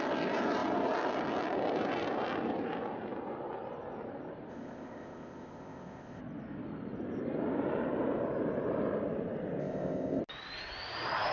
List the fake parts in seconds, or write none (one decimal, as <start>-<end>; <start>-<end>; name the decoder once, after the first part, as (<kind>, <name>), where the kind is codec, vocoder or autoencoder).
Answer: 4.5-6.2 (codec, ZipCodec); 9.6-10.2